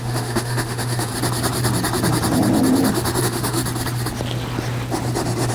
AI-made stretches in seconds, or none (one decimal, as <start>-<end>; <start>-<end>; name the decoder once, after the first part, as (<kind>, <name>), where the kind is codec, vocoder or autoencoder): 0.0-1.1 (autoencoder, DAC-VAE); 3.2-3.6